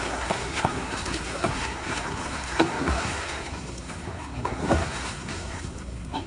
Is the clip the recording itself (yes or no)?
no